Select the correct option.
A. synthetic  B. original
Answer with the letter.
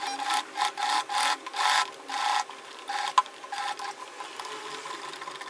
B